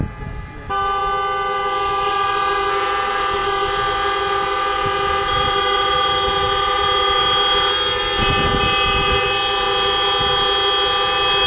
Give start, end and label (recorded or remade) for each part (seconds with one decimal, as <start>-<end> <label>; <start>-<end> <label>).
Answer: 0.0-11.5 recorded